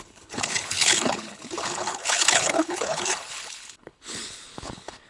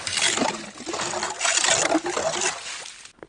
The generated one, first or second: first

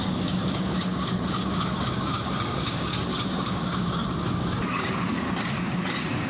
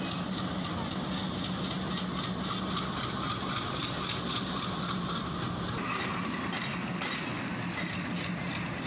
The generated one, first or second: first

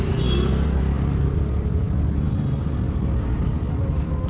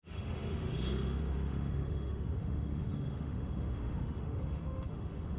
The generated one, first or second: second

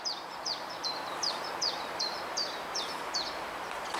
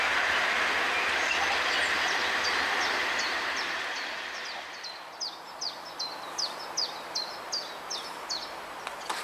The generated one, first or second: first